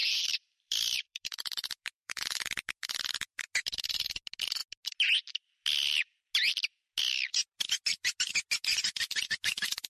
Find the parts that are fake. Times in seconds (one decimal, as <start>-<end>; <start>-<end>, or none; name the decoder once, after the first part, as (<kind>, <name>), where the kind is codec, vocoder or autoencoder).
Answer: 0.0-2.2 (vocoder, BigVGAN v2)